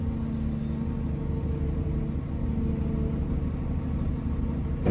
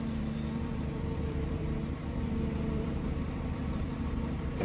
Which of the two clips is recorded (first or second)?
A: first